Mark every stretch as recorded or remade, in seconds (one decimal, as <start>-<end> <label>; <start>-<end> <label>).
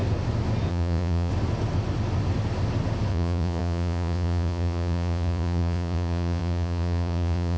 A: 0.0-0.7 recorded; 0.7-1.3 remade; 1.3-3.1 recorded; 3.1-7.6 remade